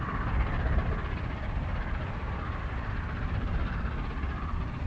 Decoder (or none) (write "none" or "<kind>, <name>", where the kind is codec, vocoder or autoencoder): none